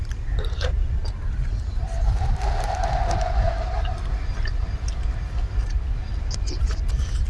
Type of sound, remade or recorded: recorded